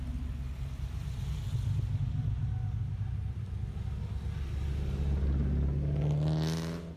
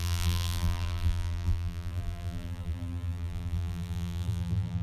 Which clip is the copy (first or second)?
second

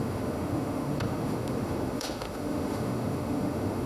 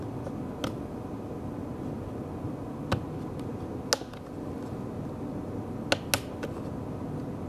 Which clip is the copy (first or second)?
first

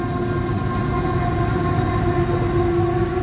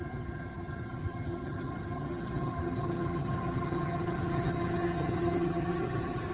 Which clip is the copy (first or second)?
second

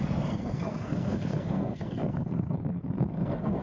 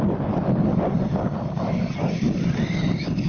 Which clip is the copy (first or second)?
first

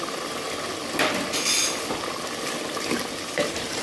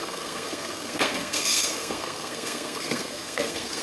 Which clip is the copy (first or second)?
second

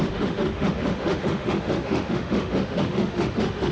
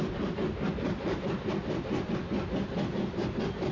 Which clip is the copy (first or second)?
first